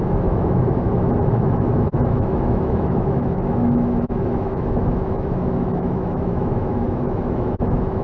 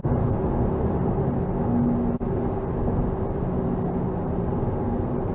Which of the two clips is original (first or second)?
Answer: second